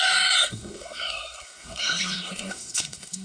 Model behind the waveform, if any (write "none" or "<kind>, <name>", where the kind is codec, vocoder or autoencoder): codec, SNAC